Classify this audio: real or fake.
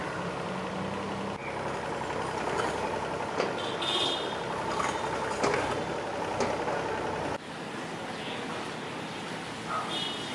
real